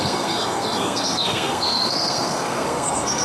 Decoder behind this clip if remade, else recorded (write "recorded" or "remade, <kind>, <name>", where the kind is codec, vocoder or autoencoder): remade, codec, SNAC